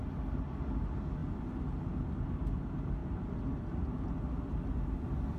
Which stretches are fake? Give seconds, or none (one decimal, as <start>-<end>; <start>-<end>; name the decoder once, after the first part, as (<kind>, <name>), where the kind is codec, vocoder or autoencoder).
none